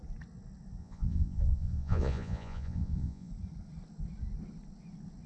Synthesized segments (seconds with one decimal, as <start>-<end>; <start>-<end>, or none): 0.8-3.3